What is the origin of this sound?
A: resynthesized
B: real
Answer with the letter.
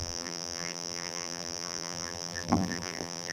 A